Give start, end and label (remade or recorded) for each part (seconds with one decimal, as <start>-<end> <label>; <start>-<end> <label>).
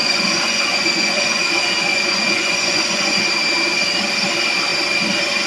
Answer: 0.0-1.4 remade; 1.4-1.9 recorded; 1.9-3.3 remade; 3.3-5.5 recorded